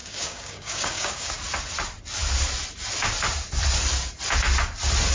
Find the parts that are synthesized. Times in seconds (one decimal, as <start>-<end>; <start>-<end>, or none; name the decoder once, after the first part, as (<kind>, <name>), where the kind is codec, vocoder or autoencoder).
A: 0.0-1.3 (codec, DAC)